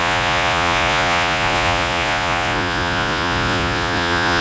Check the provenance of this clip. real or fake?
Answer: fake